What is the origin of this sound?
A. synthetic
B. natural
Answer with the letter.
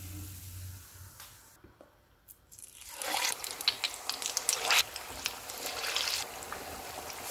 B